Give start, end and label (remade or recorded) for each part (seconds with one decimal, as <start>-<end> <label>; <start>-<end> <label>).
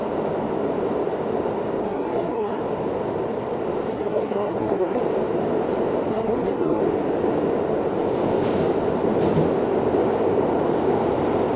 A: 0.0-1.8 recorded; 1.8-2.6 remade; 2.6-3.9 recorded; 3.9-5.0 remade; 5.0-6.1 recorded; 6.1-6.8 remade; 6.8-11.6 recorded